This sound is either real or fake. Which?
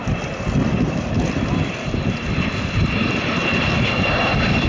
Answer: real